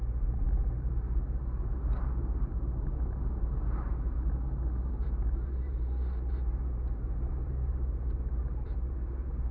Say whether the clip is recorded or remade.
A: remade